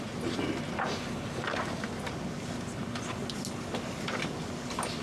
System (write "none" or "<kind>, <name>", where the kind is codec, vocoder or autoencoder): none